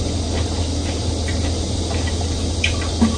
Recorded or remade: recorded